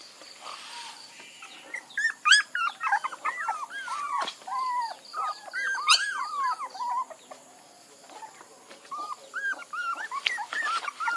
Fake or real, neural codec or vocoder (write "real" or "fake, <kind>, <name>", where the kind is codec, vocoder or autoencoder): fake, vocoder, BigVGAN v2